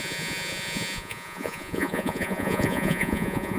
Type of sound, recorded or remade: remade